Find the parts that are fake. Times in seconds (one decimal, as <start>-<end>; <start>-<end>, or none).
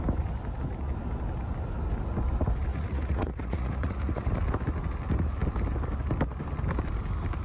2.7-4.3